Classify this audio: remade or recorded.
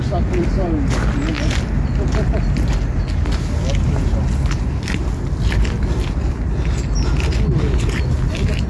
recorded